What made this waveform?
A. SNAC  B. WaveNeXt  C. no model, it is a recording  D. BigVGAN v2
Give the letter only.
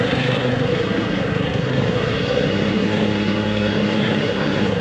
A